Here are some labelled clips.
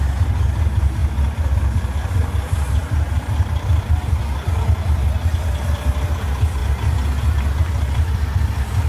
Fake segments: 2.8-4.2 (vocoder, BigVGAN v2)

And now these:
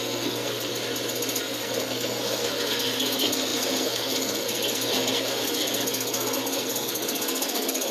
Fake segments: 0.0-0.7 (codec, SNAC); 1.4-7.9

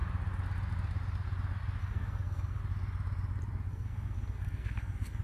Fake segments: 1.8-2.6 (codec, SNAC); 3.7-5.2